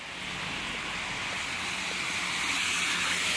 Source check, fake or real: real